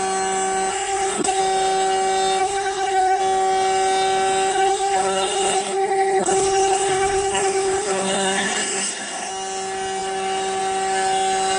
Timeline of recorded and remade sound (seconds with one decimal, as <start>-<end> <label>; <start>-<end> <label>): 0.0-0.7 recorded; 0.7-1.4 remade; 1.4-2.4 recorded; 2.4-3.2 remade; 3.2-4.5 recorded; 4.5-9.3 remade; 9.3-11.6 recorded